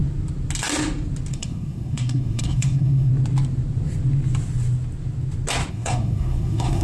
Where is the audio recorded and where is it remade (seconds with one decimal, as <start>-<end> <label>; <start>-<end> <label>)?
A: 0.0-1.3 recorded; 1.3-3.1 remade; 3.1-5.7 recorded; 5.7-6.8 remade